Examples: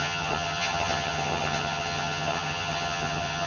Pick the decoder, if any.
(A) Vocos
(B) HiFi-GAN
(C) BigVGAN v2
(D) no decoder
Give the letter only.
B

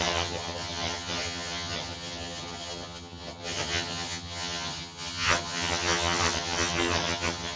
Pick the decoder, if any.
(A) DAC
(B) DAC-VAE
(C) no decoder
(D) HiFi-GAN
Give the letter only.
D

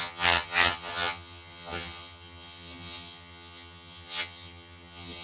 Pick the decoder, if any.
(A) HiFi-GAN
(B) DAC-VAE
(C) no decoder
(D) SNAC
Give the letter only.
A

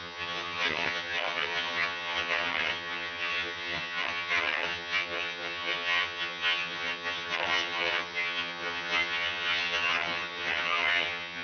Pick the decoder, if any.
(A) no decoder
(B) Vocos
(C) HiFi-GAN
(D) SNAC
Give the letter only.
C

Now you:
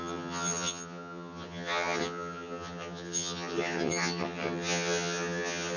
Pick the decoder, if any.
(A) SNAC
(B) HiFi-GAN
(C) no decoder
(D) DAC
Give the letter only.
B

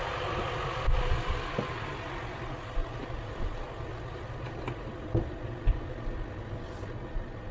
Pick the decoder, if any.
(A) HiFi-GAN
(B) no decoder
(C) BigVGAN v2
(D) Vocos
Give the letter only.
B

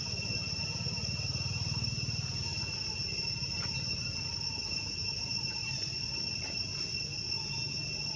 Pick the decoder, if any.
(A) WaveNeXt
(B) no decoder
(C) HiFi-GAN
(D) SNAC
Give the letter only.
B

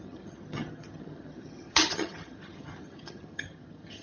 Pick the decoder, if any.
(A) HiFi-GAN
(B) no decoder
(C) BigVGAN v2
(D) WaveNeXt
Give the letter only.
A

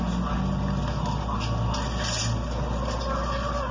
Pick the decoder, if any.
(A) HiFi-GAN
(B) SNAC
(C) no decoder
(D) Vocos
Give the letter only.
C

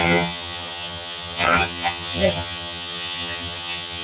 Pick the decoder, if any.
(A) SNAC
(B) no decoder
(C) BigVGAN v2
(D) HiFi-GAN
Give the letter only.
D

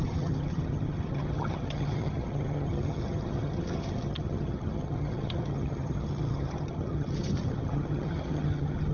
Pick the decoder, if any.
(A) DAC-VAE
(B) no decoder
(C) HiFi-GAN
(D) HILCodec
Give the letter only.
C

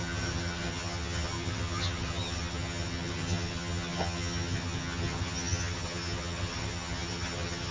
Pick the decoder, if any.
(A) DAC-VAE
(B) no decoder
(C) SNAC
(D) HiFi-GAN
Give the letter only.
D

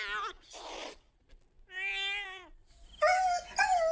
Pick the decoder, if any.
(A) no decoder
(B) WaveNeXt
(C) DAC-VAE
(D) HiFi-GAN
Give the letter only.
A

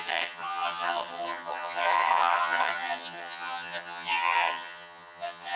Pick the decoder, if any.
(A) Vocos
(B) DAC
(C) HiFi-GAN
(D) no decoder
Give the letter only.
C